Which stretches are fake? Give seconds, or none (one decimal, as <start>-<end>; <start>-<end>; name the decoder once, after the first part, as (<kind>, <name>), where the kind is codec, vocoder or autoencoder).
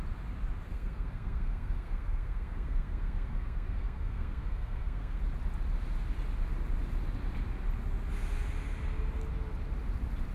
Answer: 0.7-5.2 (codec, SNAC)